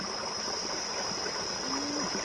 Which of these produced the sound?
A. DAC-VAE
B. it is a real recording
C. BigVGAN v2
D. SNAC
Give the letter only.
B